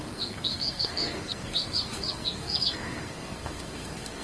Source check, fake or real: fake